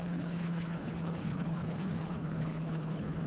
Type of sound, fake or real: fake